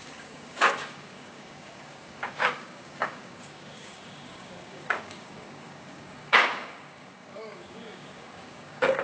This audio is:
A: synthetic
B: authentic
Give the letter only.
A